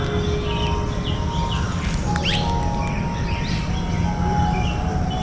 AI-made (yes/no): no